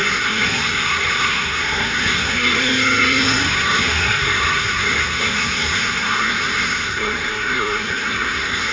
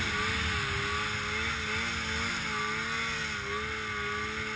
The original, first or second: second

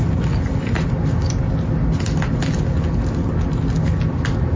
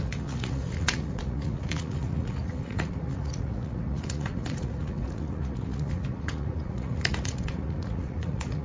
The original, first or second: first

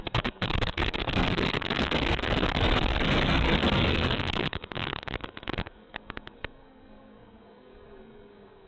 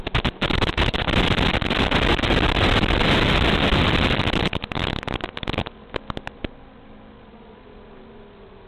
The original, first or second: second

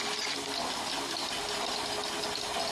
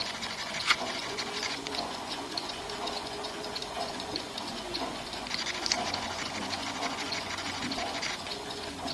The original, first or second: first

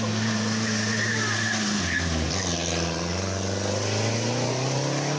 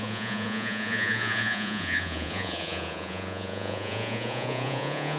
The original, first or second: first